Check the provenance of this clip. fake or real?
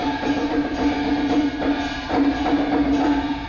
fake